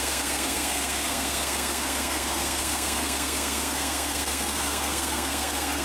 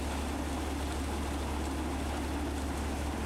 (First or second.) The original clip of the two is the second